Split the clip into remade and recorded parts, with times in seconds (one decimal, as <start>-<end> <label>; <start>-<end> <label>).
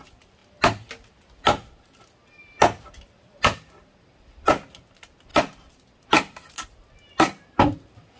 0.0-8.2 recorded